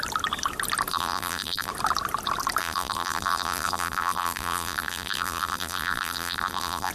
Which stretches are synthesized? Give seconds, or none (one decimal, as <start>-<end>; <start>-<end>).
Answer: 0.9-1.7; 2.6-6.9